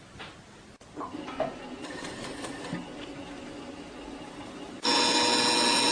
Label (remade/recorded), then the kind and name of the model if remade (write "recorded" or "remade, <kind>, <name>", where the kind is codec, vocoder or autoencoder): recorded